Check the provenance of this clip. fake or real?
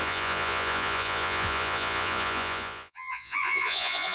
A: fake